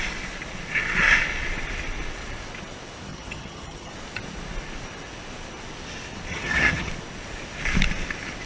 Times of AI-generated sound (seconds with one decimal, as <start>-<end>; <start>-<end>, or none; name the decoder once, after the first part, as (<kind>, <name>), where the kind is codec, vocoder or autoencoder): 3.1-3.9 (vocoder, HiFi-GAN); 6.3-6.9